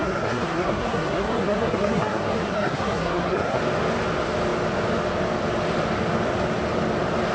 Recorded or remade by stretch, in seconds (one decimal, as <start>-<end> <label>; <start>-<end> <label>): 0.0-3.6 remade; 3.6-7.3 recorded